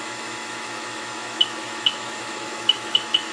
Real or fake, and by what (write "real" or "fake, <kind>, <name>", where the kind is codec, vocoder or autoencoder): fake, autoencoder, DAC-VAE